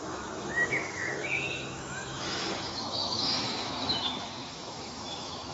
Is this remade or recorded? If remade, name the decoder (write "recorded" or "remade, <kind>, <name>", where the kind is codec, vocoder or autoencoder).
remade, autoencoder, DAC-VAE